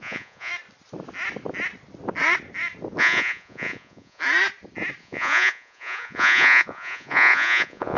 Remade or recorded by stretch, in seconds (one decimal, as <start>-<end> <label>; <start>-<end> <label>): 0.0-0.5 remade; 0.5-3.0 recorded; 3.0-4.2 remade; 4.2-5.0 recorded; 5.0-8.0 remade

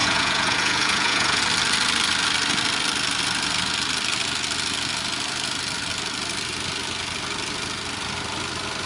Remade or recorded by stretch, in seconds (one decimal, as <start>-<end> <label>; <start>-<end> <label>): 0.0-1.4 remade; 1.4-8.9 recorded

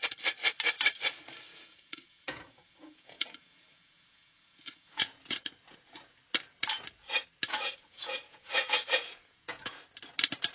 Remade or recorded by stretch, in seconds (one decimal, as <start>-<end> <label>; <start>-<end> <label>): 0.0-1.5 recorded; 1.5-6.1 remade; 6.1-7.5 recorded; 7.5-9.8 remade; 9.8-10.5 recorded

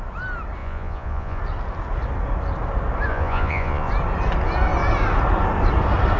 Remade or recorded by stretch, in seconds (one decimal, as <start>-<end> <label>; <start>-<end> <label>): 0.0-0.6 recorded; 0.6-1.4 remade; 1.4-3.1 recorded; 3.1-3.9 remade; 3.9-6.2 recorded

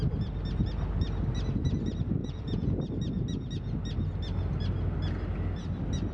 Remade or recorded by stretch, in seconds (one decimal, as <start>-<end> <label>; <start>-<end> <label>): 0.0-2.2 recorded; 2.2-2.9 remade; 2.9-6.1 recorded

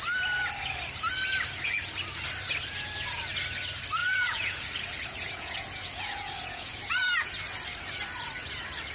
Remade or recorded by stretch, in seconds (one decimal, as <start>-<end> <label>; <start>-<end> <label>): 0.0-4.0 recorded; 4.0-6.8 remade; 6.8-8.9 recorded

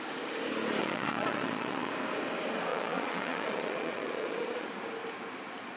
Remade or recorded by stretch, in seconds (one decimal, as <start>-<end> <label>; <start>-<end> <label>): 0.0-0.8 recorded; 0.8-1.9 remade; 1.9-2.7 recorded; 2.7-4.7 remade; 4.7-5.8 recorded

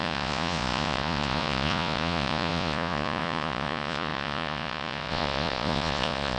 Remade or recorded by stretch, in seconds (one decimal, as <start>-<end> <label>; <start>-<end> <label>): 0.0-6.4 remade